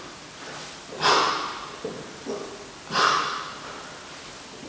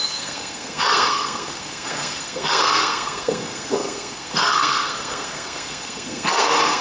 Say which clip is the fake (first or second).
second